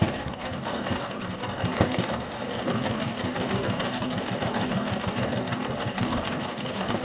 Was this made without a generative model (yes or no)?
no